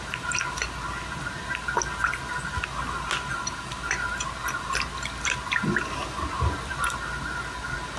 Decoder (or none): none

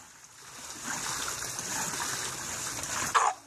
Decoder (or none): none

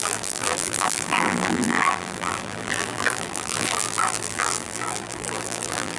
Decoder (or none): vocoder, BigVGAN v2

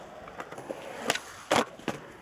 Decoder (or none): none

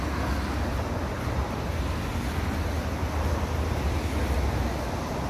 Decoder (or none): none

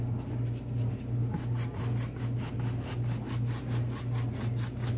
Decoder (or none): vocoder, BigVGAN v2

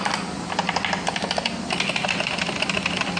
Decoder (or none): none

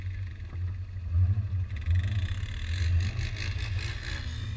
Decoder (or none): none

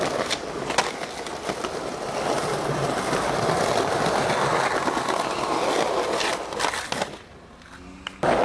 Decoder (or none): none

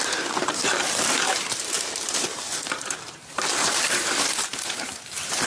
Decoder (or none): vocoder, BigVGAN v2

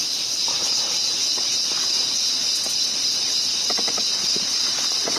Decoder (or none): vocoder, BigVGAN v2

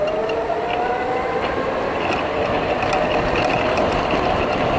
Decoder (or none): none